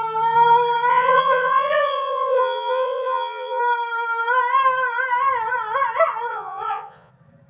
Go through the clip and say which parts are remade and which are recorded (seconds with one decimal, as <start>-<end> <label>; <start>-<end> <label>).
0.0-0.9 recorded; 0.9-3.6 remade; 3.6-6.3 recorded; 6.3-7.1 remade; 7.1-7.5 recorded